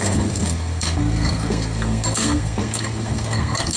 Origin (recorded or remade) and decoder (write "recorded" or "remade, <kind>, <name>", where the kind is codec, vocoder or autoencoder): remade, codec, SNAC